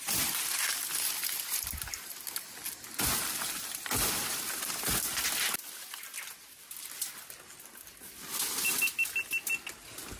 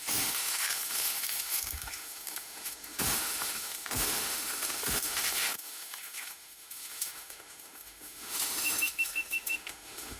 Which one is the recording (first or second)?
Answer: first